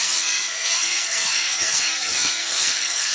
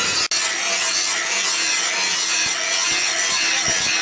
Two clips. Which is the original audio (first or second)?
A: second